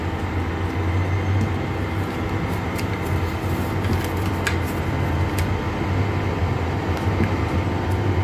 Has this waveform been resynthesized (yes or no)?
no